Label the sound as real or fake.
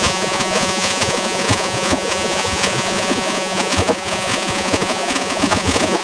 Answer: fake